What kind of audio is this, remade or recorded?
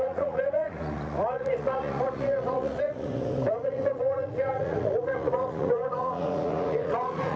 remade